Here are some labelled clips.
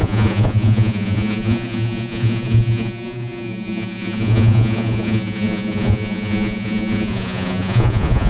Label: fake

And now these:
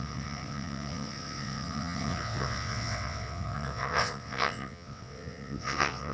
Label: fake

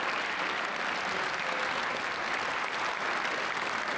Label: real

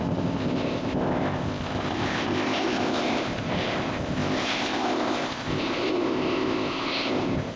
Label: fake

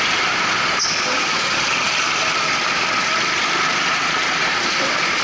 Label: real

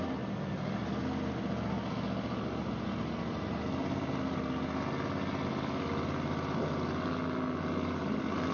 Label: real